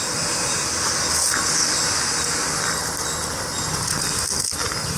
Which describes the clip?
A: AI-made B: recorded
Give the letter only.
B